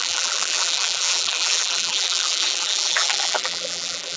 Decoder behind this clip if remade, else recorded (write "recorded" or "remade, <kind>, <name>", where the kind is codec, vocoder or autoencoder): remade, vocoder, BigVGAN v2